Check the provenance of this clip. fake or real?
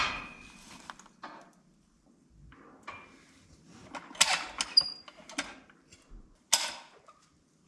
real